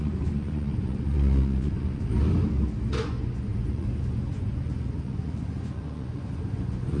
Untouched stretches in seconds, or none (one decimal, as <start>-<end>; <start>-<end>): 2.1-2.9

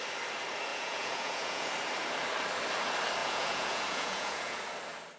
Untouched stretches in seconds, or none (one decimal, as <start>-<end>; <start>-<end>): 0.0-0.7; 1.7-3.2; 4.6-5.2

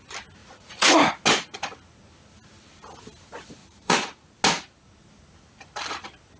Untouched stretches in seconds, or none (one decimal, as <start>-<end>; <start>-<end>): 0.0-0.4; 1.1-3.6; 4.4-6.4